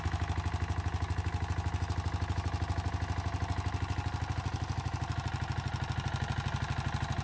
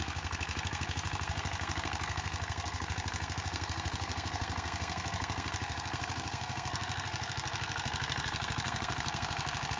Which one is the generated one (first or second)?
second